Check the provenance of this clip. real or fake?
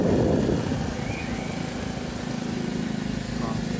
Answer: real